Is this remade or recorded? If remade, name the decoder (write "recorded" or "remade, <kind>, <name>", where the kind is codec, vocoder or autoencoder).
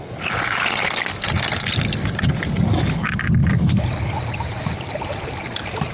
recorded